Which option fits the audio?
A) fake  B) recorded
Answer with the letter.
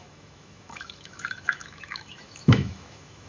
A